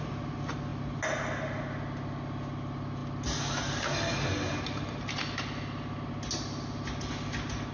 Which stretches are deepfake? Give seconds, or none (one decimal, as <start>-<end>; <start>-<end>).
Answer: none